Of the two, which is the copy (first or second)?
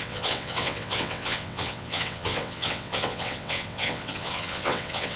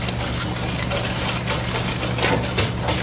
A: first